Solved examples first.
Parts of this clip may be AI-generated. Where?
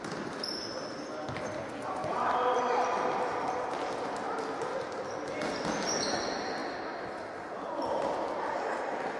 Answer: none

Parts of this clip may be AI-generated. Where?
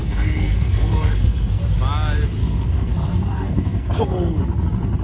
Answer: 0.0-1.6 (codec, SNAC); 2.4-4.4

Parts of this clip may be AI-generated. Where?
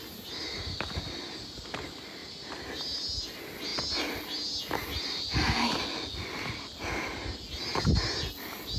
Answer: none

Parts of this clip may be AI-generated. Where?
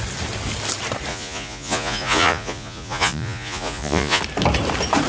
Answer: 1.1-4.2 (vocoder, Vocos)